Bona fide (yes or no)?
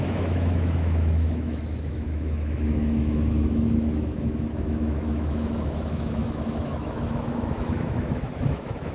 no